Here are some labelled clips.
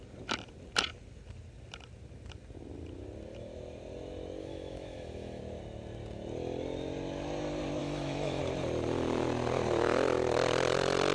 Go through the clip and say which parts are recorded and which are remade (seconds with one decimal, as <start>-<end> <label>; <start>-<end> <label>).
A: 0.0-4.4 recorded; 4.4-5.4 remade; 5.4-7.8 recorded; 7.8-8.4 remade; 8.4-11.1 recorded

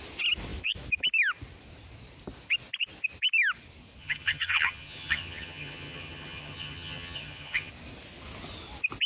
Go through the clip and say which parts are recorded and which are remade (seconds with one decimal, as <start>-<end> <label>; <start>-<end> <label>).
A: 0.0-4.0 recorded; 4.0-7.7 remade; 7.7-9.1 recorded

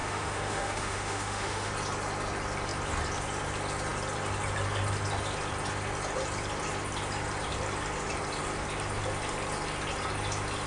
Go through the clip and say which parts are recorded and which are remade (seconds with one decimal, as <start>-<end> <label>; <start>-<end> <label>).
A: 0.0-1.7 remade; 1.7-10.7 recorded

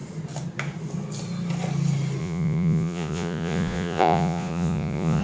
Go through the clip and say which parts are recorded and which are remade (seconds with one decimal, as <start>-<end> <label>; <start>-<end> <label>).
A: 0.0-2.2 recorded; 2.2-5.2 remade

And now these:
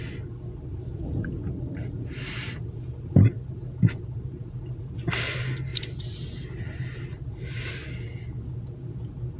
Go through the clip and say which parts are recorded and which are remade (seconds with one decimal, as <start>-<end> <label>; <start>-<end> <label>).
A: 0.0-0.7 recorded; 0.7-5.2 remade; 5.2-5.7 recorded; 5.7-7.7 remade; 7.7-9.4 recorded

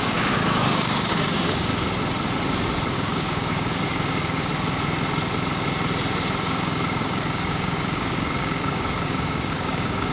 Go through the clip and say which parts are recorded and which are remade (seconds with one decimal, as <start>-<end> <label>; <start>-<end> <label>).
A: 0.0-1.7 remade; 1.7-2.9 recorded; 2.9-4.5 remade; 4.5-6.4 recorded; 6.4-10.1 remade